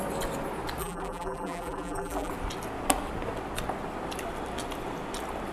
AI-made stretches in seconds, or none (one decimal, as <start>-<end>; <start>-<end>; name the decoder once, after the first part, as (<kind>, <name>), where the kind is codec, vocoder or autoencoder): 0.8-2.3 (vocoder, BigVGAN v2)